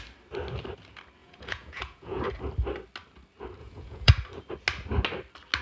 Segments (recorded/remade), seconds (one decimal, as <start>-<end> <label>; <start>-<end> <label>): 0.0-1.2 recorded; 1.2-2.2 remade; 2.2-3.6 recorded; 3.6-4.1 remade; 4.1-5.6 recorded

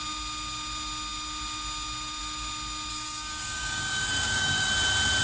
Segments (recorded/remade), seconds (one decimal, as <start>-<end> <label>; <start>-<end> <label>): 0.0-2.9 recorded; 2.9-4.7 remade; 4.7-5.2 recorded

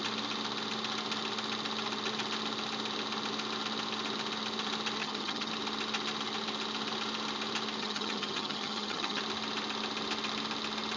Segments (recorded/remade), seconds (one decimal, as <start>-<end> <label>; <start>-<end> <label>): 0.0-5.0 recorded; 5.0-5.5 remade; 5.5-7.8 recorded; 7.8-9.2 remade; 9.2-11.0 recorded